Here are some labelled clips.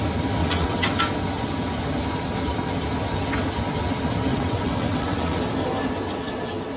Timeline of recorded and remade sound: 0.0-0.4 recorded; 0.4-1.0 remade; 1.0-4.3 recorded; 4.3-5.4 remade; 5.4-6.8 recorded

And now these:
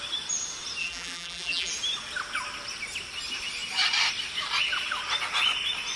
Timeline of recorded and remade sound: 0.0-0.8 recorded; 0.8-1.7 remade; 1.7-6.0 recorded

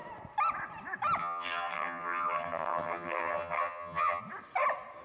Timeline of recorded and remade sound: 0.0-1.2 recorded; 1.2-4.2 remade; 4.2-5.0 recorded

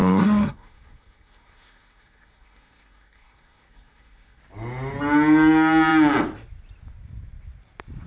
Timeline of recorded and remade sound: 0.0-4.4 remade; 4.4-8.1 recorded

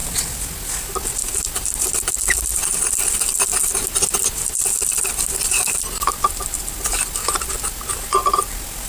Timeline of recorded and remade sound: 0.0-8.9 recorded

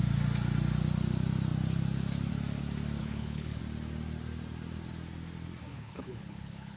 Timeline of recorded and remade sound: 0.0-3.0 recorded; 3.0-3.6 remade; 3.6-5.7 recorded; 5.7-6.8 remade